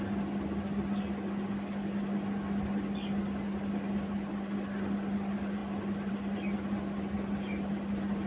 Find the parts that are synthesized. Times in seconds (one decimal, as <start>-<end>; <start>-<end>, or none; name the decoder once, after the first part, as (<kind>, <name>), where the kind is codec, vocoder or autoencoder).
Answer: none